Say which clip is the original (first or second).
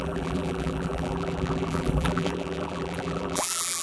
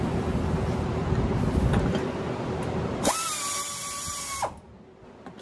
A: second